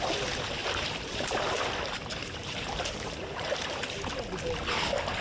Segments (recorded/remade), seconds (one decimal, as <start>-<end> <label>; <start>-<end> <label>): 0.0-0.6 recorded; 0.6-1.8 remade; 1.8-2.2 recorded; 2.2-3.7 remade; 3.7-5.2 recorded